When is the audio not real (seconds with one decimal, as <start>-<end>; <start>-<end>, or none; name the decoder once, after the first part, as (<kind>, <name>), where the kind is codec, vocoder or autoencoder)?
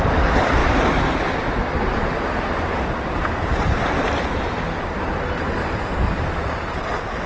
none